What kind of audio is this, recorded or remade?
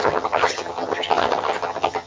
remade